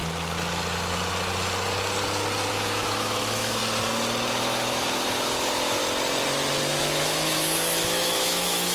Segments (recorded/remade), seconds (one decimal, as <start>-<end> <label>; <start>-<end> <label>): 0.0-2.5 recorded; 2.5-3.6 remade; 3.6-4.4 recorded; 4.4-5.8 remade; 5.8-6.8 recorded; 6.8-8.7 remade